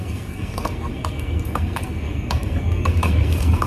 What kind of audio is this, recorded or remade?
remade